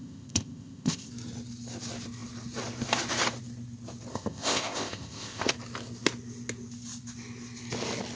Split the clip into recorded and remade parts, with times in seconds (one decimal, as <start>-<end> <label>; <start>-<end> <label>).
0.0-1.1 remade; 1.1-4.1 recorded; 4.1-5.5 remade; 5.5-8.2 recorded